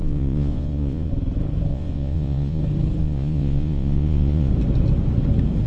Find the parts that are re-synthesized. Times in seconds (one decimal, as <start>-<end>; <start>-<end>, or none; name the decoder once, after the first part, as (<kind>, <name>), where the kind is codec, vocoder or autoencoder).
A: 0.0-1.1 (vocoder, Vocos); 1.7-2.6; 3.0-4.5